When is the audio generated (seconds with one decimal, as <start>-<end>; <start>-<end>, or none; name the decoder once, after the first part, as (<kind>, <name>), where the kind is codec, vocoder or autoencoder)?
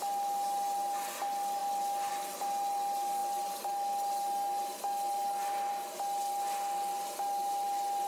none